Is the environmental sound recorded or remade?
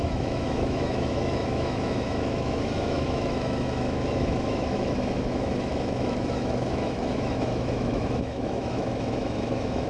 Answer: remade